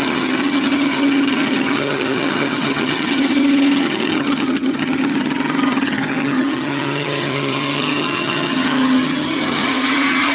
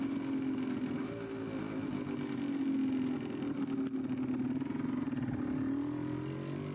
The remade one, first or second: first